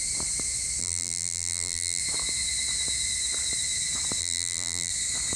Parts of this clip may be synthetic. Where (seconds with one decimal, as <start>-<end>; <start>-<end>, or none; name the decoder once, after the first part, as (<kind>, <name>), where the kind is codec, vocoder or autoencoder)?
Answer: 0.8-2.0 (vocoder, BigVGAN v2); 4.2-4.9